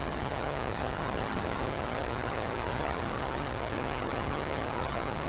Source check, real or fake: fake